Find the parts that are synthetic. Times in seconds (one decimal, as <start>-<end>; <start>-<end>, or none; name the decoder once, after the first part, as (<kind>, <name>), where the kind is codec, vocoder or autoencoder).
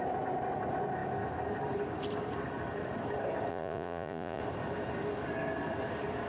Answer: 3.5-4.4 (vocoder, Vocos)